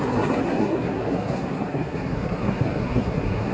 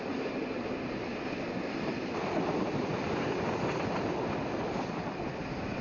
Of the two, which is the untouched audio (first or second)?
second